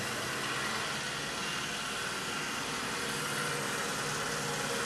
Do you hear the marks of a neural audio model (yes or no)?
no